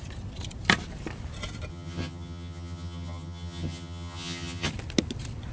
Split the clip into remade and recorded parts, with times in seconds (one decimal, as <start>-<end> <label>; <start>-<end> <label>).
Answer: 0.0-1.7 recorded; 1.7-4.7 remade; 4.7-5.5 recorded